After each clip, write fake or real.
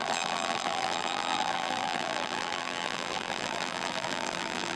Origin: fake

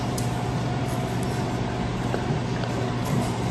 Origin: real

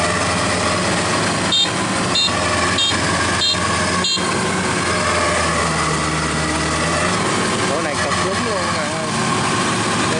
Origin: real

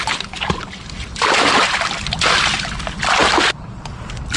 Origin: real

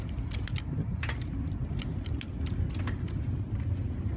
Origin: real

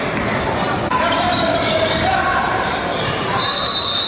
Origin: fake